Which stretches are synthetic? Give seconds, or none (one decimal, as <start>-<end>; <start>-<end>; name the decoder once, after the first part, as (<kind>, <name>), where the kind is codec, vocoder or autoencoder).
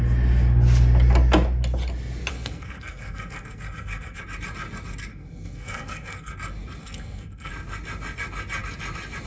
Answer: 2.3-4.2 (codec, SNAC); 5.1-6.3; 6.8-7.5